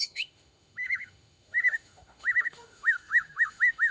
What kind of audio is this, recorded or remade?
remade